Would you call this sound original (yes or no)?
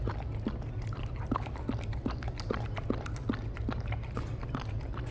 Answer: yes